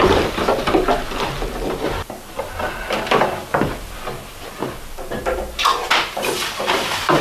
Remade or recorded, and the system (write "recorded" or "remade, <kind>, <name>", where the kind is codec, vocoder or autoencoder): recorded